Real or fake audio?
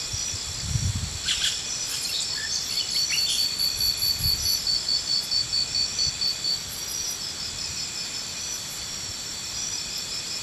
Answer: real